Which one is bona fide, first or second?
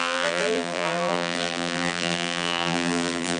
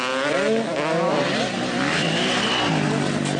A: second